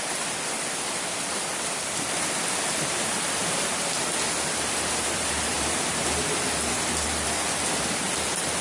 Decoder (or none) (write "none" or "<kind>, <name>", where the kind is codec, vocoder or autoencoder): vocoder, BigVGAN v2